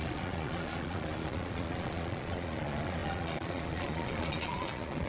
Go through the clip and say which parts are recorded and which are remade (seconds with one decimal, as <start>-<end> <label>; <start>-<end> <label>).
0.0-5.1 remade